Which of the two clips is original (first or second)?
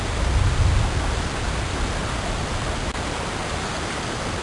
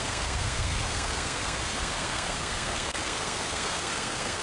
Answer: first